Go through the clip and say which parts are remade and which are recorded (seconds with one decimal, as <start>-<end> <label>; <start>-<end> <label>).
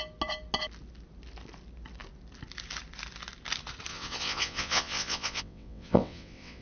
0.0-3.9 recorded; 3.9-6.6 remade